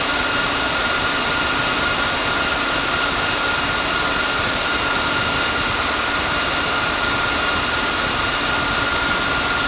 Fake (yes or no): no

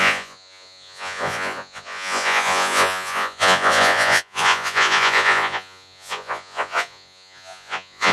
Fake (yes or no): yes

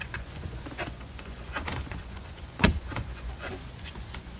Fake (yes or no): yes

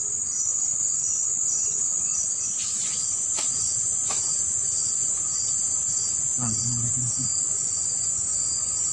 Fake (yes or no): yes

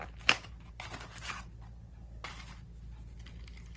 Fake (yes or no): no